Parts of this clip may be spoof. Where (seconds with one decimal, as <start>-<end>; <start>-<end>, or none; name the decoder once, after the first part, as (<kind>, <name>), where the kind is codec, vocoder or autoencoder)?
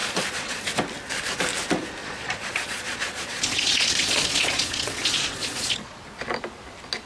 0.0-0.7 (vocoder, Vocos); 2.0-6.0